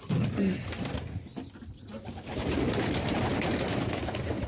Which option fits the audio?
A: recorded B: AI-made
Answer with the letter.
B